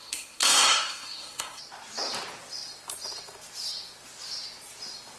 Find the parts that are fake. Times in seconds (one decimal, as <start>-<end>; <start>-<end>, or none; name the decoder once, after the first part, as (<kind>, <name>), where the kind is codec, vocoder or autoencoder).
0.0-1.6 (codec, SNAC)